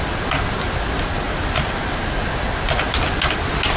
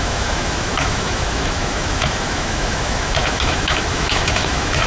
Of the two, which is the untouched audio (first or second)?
first